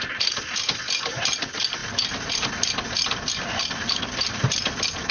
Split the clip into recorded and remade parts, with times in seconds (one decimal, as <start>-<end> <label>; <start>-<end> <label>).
0.0-5.1 recorded